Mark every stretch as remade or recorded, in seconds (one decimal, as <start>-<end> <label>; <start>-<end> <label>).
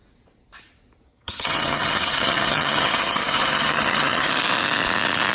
0.0-1.1 recorded; 1.1-4.3 remade; 4.3-5.3 recorded